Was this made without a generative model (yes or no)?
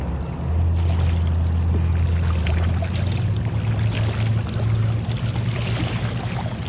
yes